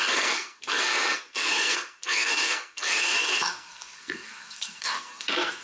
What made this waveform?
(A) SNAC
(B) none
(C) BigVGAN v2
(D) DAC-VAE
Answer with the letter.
A